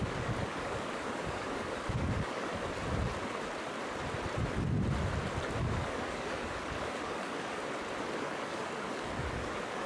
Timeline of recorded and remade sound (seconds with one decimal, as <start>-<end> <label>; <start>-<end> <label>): 0.0-2.5 remade; 2.5-5.6 recorded; 5.6-7.6 remade; 7.6-8.1 recorded; 8.1-9.9 remade